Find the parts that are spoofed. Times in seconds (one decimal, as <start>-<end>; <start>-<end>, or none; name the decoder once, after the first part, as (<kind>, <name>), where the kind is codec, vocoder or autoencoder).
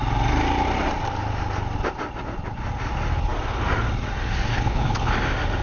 4.5-5.1 (codec, HILCodec)